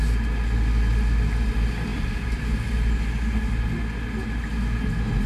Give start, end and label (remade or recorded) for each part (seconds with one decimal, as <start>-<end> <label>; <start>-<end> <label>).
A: 0.0-5.3 recorded